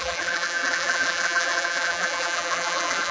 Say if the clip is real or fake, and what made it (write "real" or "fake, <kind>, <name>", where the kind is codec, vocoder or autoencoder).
fake, vocoder, BigVGAN v2